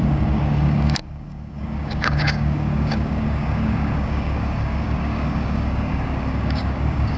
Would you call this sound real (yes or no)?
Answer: no